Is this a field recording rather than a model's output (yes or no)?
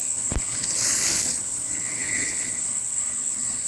no